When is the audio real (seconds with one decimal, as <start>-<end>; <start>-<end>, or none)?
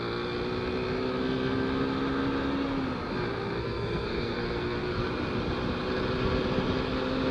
0.0-3.6; 5.1-7.3